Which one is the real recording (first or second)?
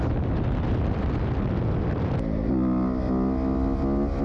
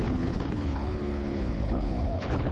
first